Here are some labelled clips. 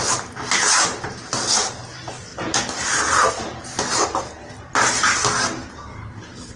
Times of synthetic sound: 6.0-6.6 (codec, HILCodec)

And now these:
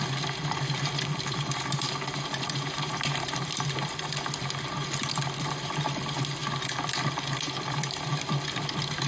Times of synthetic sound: none